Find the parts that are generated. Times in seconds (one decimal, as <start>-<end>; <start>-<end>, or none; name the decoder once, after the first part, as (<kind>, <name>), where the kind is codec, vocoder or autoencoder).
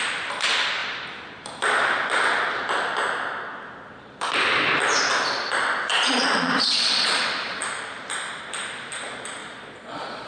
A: 5.9-7.6 (vocoder, Vocos); 9.4-10.3